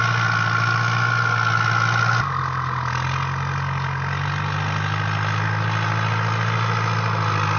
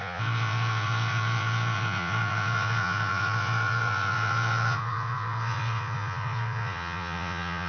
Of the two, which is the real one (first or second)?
first